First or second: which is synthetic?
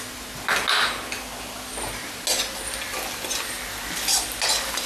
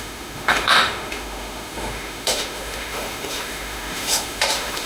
second